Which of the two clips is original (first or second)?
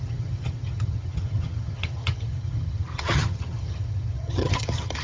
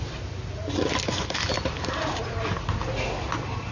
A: second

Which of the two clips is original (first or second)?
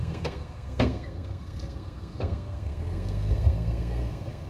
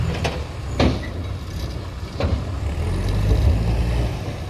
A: second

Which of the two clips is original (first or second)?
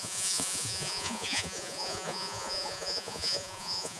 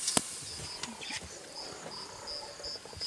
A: second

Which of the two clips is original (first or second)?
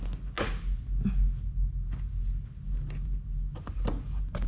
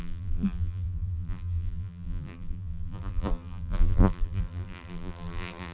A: first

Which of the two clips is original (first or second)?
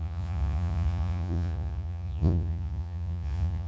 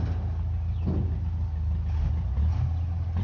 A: second